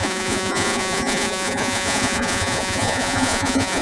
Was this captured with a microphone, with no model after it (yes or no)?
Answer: no